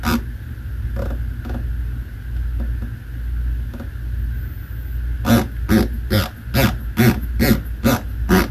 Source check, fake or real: real